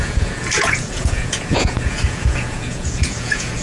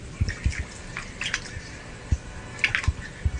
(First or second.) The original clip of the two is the second